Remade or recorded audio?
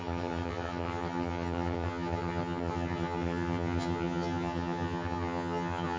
remade